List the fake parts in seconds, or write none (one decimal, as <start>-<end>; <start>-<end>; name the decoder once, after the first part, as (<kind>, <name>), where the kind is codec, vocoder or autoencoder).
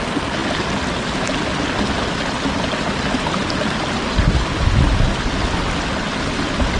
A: none